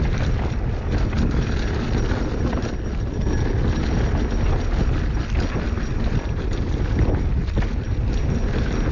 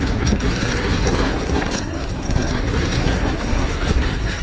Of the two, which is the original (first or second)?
first